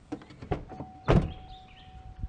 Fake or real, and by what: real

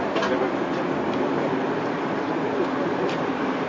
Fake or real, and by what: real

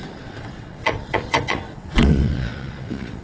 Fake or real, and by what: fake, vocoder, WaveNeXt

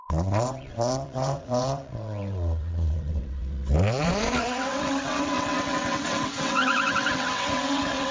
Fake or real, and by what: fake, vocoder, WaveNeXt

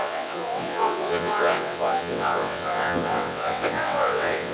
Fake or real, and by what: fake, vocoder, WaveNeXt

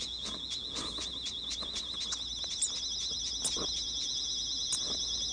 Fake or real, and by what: real